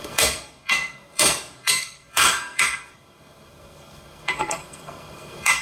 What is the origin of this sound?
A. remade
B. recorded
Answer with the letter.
A